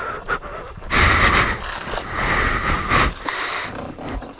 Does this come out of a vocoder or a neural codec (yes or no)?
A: no